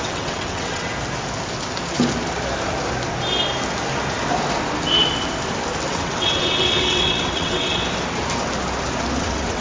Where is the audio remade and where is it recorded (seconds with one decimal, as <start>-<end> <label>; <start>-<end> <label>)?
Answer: 0.0-0.9 remade; 0.9-5.9 recorded; 5.9-7.8 remade; 7.8-9.2 recorded; 9.2-9.6 remade